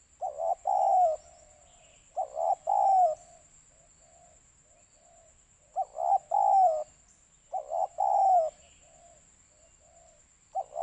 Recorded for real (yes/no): yes